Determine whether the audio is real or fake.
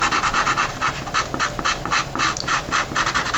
real